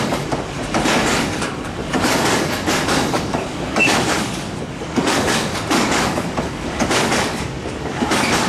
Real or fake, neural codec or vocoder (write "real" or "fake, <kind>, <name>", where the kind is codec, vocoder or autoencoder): fake, codec, DAC